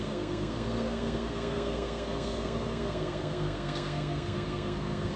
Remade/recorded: remade